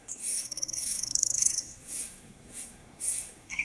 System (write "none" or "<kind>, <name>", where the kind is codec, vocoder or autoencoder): codec, SNAC